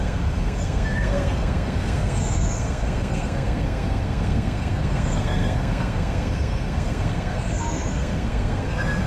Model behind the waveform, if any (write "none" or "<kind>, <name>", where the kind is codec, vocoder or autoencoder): codec, SNAC